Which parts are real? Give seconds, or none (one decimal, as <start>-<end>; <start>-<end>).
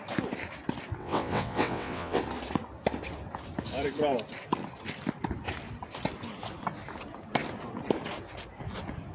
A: 0.0-1.0; 2.2-9.1